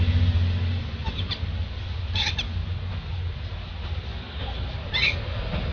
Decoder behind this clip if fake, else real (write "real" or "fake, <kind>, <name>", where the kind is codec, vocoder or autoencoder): real